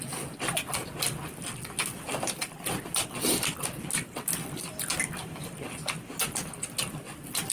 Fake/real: real